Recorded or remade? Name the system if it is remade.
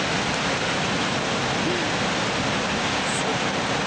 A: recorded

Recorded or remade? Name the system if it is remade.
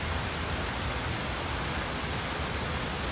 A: recorded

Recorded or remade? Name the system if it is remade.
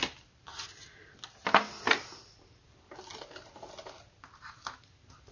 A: recorded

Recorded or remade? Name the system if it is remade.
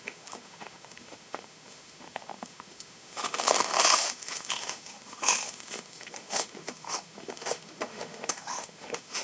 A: remade, autoencoder, DAC-VAE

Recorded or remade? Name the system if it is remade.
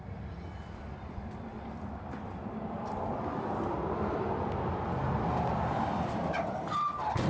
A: remade, vocoder, BigVGAN v2